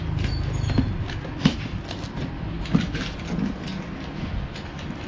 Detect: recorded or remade recorded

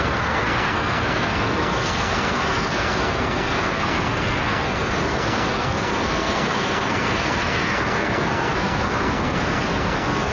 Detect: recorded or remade remade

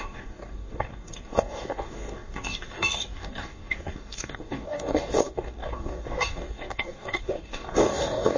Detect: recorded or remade remade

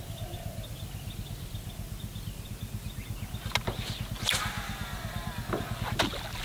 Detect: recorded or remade recorded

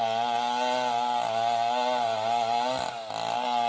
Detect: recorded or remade recorded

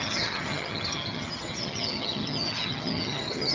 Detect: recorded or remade remade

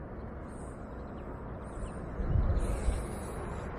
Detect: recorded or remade recorded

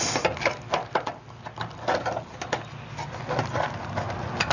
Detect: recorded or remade recorded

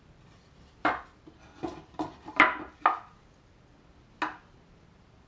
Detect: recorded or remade recorded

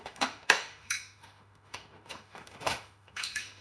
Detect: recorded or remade remade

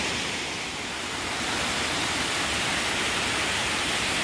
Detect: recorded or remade remade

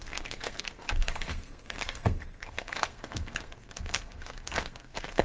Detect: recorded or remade remade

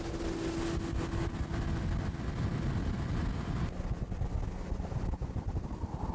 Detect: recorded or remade recorded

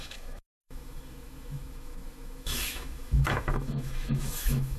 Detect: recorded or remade remade